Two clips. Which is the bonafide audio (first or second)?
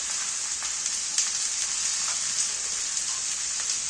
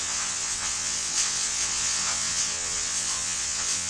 first